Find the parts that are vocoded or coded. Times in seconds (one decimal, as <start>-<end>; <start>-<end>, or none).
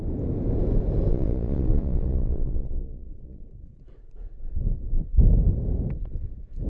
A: 1.1-4.6